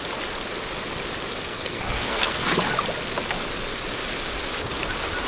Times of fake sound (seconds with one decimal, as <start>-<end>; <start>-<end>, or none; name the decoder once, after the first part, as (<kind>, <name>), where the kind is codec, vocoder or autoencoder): 1.4-2.5 (codec, SNAC)